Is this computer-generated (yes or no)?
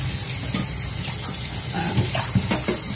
no